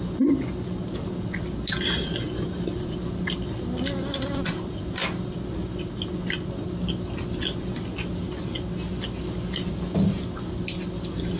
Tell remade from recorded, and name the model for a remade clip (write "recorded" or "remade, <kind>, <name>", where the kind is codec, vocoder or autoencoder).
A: recorded